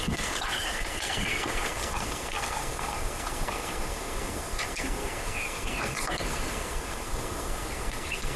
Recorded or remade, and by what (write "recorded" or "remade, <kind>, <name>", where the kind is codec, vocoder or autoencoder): remade, codec, SNAC